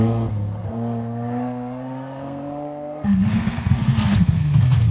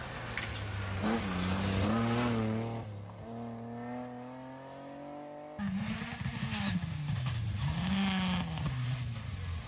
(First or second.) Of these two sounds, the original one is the second